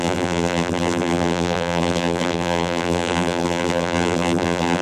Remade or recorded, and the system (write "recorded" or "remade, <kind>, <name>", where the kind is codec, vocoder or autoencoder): remade, vocoder, BigVGAN v2